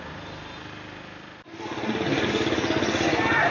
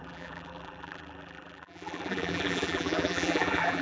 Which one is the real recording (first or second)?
first